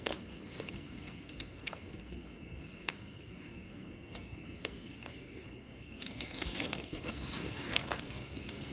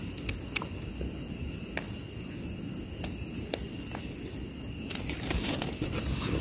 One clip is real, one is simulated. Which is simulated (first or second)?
first